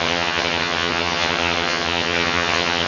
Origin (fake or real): fake